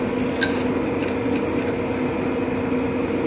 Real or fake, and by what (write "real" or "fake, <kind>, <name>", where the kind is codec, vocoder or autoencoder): real